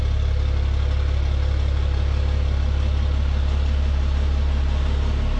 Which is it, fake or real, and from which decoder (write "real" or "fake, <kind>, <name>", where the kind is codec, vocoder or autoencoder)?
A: real